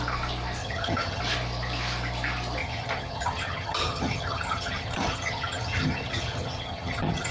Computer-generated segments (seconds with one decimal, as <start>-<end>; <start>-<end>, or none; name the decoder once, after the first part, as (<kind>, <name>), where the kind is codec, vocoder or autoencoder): 0.6-1.2 (vocoder, HiFi-GAN); 2.6-7.3